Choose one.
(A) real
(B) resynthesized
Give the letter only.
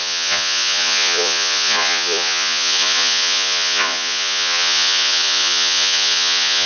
B